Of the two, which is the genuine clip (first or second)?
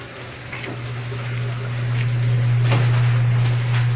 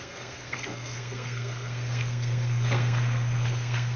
first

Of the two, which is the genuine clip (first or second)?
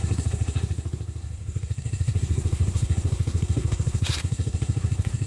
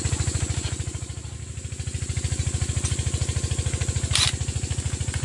second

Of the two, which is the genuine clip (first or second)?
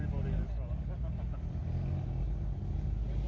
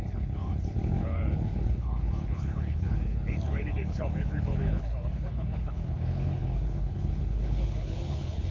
first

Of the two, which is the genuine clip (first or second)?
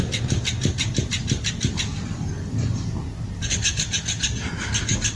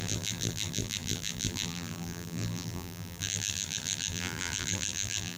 first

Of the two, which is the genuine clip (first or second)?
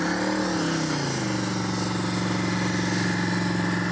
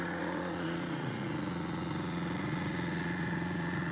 first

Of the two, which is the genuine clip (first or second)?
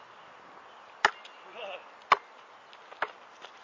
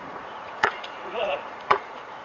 first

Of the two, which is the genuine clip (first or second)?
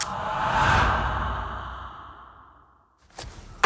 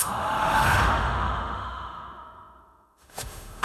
first